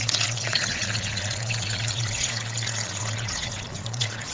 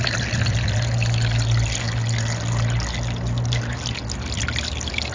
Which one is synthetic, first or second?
first